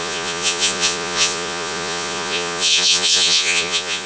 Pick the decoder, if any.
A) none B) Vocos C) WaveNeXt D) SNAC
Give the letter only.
B